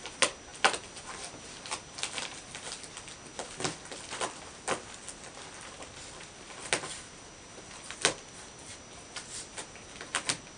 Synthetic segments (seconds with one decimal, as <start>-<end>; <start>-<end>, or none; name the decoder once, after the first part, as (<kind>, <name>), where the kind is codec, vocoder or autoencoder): none

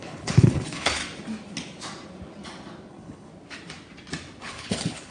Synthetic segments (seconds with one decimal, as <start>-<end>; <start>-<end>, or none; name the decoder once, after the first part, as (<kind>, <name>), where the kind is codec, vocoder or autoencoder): 0.0-1.0 (codec, HILCodec); 2.9-3.3; 4.4-5.1

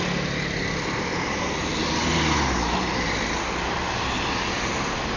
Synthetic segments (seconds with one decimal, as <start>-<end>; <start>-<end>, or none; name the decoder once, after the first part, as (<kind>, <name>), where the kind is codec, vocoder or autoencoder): none

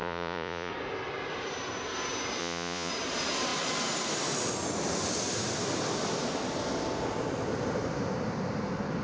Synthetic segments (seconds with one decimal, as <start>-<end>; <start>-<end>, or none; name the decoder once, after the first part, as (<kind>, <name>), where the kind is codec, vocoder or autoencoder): 0.0-0.7 (vocoder, Vocos); 2.4-2.9

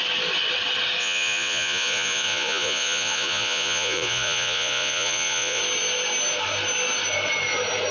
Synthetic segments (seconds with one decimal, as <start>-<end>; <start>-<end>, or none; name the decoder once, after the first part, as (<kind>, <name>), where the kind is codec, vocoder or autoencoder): 1.0-5.6 (vocoder, Vocos)

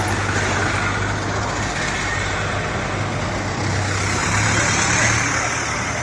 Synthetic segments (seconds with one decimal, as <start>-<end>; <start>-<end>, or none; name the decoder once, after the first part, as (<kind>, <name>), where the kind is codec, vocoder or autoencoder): 4.2-5.0 (vocoder, BigVGAN v2)

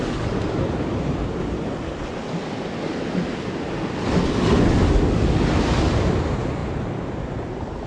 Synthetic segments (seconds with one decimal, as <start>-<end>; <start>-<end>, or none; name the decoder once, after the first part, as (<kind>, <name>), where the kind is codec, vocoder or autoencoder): none

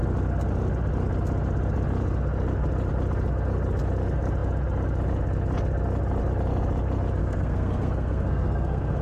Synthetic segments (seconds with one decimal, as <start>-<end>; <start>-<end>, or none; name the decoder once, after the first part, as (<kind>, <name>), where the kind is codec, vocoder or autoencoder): 7.2-9.0 (codec, SNAC)